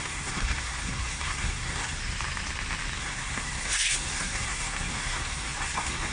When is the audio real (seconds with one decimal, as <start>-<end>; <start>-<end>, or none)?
2.0-3.0